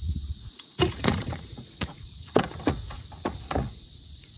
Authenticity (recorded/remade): remade